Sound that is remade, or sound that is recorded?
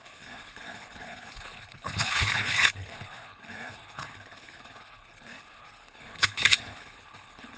remade